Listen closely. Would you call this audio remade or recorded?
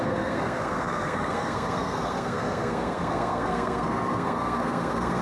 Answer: remade